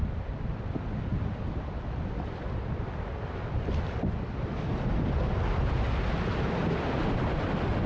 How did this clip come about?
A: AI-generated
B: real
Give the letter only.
B